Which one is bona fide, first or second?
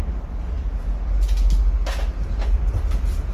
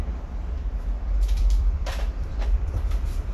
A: first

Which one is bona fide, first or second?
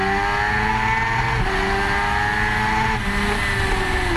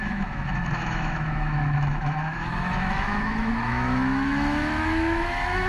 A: first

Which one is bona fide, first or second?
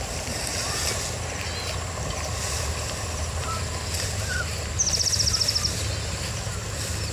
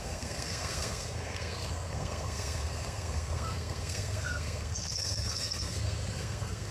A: first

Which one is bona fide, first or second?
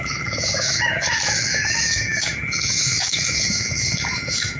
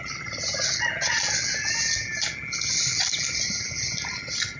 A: second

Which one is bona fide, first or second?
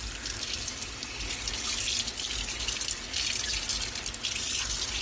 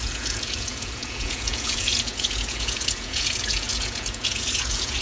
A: first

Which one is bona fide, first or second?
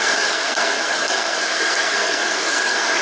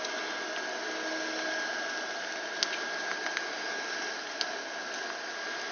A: second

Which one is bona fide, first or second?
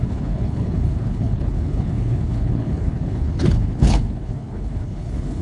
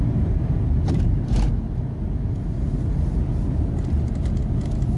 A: second